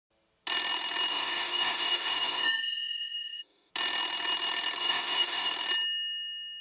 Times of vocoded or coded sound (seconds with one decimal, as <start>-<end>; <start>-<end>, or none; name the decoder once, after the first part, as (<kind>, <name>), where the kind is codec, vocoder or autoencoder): 1.1-3.7 (autoencoder, DAC-VAE); 4.8-5.5

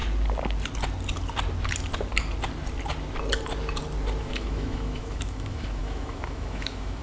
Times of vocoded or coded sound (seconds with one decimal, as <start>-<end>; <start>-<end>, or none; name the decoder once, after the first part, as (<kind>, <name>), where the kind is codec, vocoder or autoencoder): 4.2-7.0 (autoencoder, DAC-VAE)

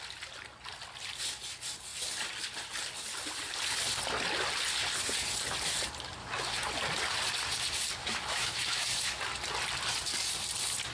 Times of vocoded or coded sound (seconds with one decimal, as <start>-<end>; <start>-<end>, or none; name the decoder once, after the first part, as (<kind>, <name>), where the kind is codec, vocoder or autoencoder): 6.2-6.7 (autoencoder, DAC-VAE); 8.0-9.2

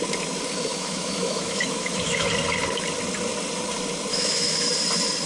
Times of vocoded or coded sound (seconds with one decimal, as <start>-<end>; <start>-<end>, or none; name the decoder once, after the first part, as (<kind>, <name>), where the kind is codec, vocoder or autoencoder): 0.7-2.3 (autoencoder, DAC-VAE); 4.1-4.7